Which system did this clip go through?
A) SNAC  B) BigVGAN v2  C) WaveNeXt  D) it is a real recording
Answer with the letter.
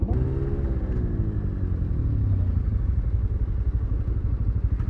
D